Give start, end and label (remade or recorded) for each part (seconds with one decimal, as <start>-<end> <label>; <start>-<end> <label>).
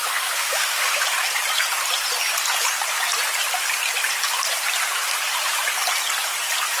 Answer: 0.0-1.0 remade; 1.0-6.8 recorded